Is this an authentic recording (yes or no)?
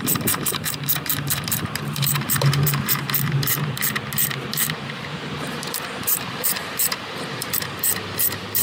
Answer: no